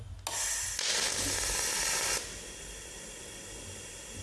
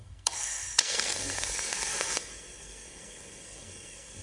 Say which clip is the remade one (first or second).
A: second